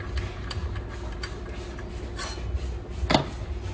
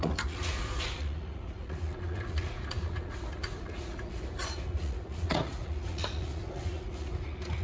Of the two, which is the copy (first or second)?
second